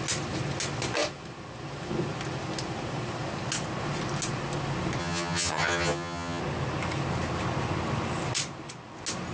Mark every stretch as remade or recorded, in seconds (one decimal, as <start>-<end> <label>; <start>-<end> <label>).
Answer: 0.0-5.0 recorded; 5.0-6.4 remade; 6.4-9.3 recorded